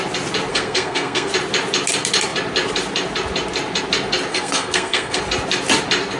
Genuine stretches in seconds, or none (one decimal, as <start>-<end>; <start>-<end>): 0.0-0.5; 1.3-4.3; 5.2-6.2

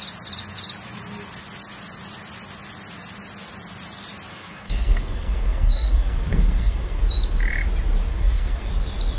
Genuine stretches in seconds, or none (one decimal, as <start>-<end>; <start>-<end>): 0.0-4.3; 7.0-8.1; 8.7-9.2

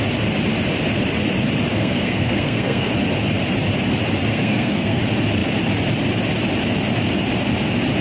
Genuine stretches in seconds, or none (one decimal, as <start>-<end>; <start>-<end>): 0.0-1.7; 2.9-4.3; 5.0-8.0

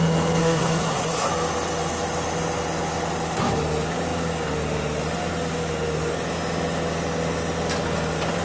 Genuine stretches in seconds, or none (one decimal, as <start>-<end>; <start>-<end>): 0.0-0.4; 1.3-8.4

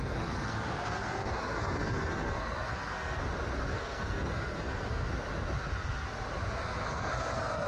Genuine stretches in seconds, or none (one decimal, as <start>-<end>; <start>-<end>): 3.2-3.7; 5.1-6.6

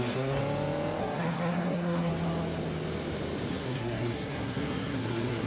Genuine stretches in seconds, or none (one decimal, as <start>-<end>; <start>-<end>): 0.4-1.0; 2.1-3.5

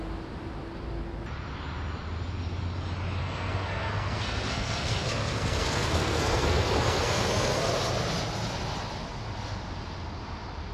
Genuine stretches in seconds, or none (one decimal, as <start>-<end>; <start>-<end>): 0.0-3.2; 7.7-10.7